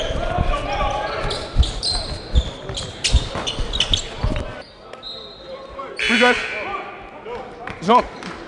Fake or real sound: real